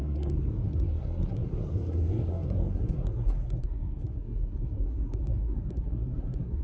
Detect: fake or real fake